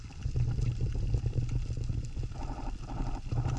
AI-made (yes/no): no